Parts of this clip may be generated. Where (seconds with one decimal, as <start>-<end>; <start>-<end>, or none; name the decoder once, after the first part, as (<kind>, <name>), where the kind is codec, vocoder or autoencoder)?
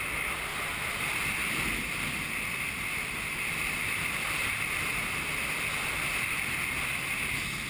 0.5-4.3 (vocoder, BigVGAN v2)